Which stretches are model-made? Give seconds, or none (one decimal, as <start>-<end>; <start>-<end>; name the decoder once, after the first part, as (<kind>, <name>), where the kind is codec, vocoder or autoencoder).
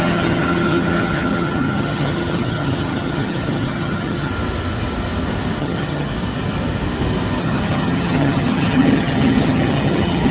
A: 0.0-4.3 (vocoder, HiFi-GAN); 5.6-6.1; 7.4-10.3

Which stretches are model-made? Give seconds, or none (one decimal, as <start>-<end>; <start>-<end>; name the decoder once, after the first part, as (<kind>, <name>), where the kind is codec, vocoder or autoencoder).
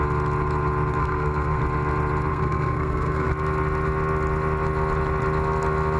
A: 1.0-1.6 (codec, SNAC); 2.3-3.3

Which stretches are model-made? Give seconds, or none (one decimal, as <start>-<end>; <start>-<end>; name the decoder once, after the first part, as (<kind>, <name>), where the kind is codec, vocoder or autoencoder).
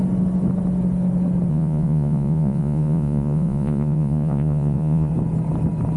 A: 1.5-5.1 (vocoder, Vocos)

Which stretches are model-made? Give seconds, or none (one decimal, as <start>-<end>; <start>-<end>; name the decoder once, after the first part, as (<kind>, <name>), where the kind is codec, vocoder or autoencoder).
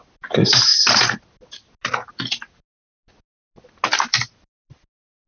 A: none